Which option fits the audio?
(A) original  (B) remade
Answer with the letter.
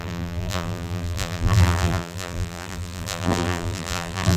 B